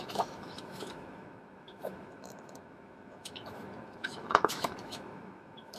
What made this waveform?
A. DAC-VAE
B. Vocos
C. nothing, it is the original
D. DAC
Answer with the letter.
A